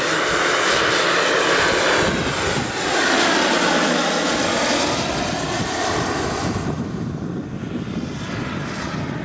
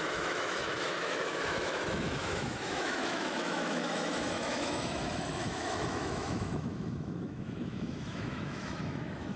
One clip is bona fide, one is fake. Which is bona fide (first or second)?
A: first